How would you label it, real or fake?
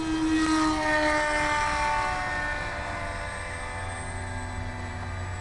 real